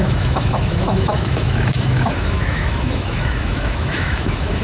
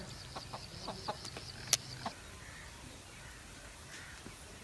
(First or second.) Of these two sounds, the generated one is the first